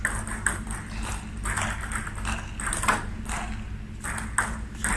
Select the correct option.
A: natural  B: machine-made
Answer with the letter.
A